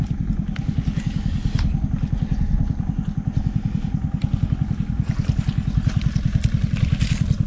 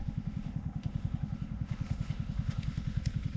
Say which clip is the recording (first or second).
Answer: first